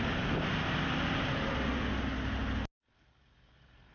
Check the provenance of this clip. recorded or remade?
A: recorded